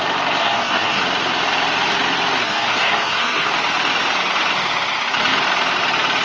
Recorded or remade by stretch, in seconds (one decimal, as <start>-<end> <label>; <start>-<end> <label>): 0.0-0.4 recorded; 0.4-1.0 remade; 1.0-2.4 recorded; 2.4-3.5 remade; 3.5-6.2 recorded